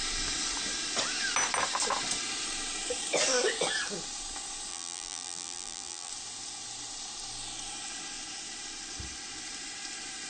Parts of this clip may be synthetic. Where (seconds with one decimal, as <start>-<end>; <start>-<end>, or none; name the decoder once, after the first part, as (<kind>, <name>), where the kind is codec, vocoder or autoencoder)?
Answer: 4.7-6.1 (vocoder, BigVGAN v2)